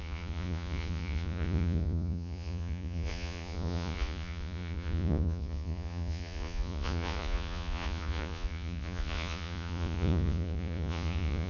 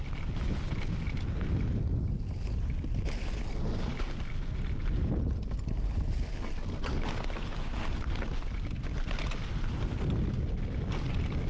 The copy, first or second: first